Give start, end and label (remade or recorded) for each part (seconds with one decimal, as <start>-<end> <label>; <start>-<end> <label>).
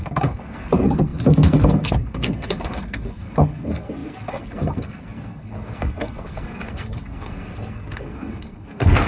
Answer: 0.0-9.1 remade